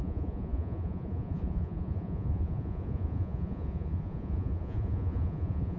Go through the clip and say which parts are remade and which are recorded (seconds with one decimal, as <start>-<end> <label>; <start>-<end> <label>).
0.0-5.8 remade